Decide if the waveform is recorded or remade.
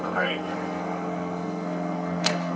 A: remade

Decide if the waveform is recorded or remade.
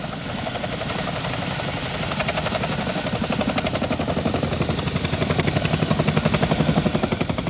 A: remade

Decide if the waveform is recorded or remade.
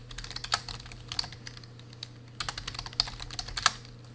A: recorded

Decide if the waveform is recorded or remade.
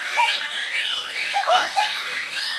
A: remade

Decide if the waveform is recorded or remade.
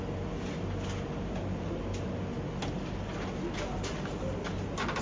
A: recorded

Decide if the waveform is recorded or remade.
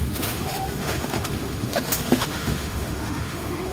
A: remade